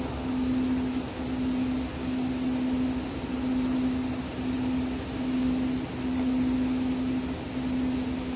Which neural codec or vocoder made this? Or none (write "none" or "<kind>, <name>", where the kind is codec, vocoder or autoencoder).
none